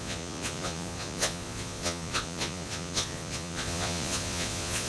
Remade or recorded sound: remade